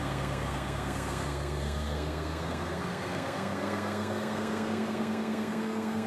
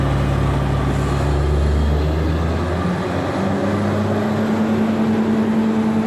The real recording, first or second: second